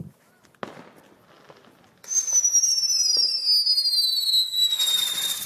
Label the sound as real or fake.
real